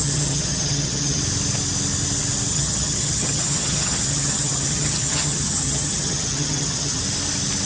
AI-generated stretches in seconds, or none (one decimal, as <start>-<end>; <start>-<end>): 0.0-1.2; 2.5-7.0